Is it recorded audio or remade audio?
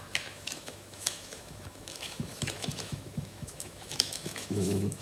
remade